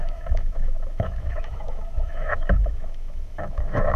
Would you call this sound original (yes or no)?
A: no